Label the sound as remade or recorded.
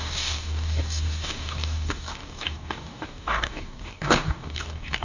remade